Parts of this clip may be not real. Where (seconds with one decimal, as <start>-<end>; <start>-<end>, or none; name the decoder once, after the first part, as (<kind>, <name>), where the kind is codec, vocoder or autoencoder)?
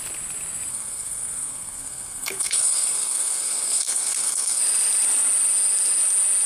0.7-4.6 (codec, SNAC)